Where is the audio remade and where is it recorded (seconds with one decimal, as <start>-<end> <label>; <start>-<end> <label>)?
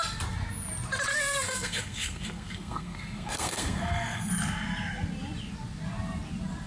0.0-1.1 recorded; 1.1-4.3 remade; 4.3-6.7 recorded